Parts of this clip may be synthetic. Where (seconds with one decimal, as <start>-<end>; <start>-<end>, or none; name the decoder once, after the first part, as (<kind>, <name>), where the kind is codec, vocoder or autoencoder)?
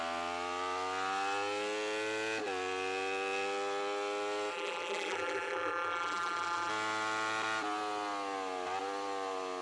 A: 4.5-6.7 (vocoder, BigVGAN v2)